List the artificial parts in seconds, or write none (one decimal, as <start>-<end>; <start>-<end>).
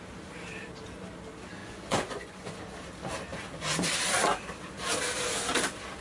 1.6-2.6